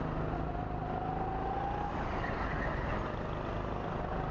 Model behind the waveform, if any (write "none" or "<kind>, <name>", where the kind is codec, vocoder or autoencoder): none